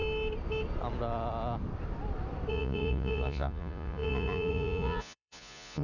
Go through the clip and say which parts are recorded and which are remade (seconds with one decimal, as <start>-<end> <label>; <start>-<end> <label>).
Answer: 0.0-2.5 recorded; 2.5-5.8 remade